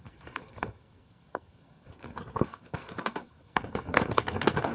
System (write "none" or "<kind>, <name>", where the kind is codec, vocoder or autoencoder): codec, SNAC